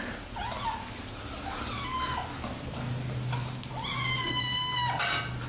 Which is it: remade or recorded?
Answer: recorded